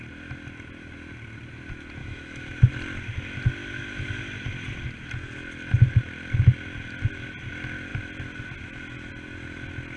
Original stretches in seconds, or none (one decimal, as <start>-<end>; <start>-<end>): 0.0-2.0; 2.7-10.0